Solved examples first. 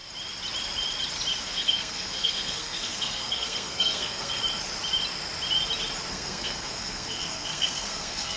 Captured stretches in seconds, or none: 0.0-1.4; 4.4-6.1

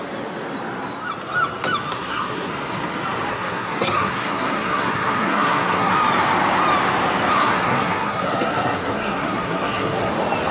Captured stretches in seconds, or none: 0.0-1.9; 2.5-3.3; 5.9-7.3; 10.1-10.5

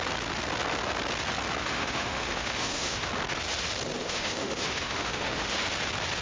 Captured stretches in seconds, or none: 0.0-1.6; 3.1-4.0; 5.5-6.2

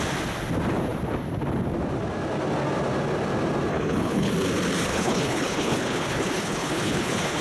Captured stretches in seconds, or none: 0.0-3.7; 4.3-4.9

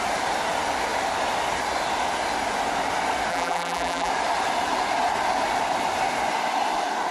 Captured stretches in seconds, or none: 0.0-3.3; 4.1-7.1

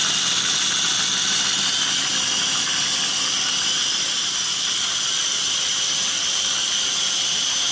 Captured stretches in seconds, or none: 0.0-7.7